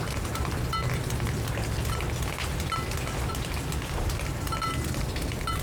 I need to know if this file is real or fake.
real